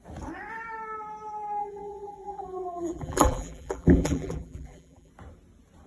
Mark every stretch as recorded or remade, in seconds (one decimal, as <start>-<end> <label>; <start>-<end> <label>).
0.0-1.6 recorded; 1.6-5.1 remade; 5.1-5.9 recorded